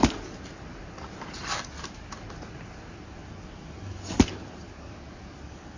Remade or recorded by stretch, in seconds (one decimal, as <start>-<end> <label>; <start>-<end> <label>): 0.0-5.8 recorded